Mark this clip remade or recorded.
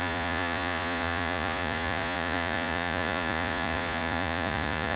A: remade